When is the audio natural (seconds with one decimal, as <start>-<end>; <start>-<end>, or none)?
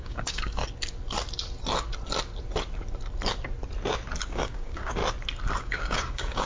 0.6-4.3; 5.0-5.6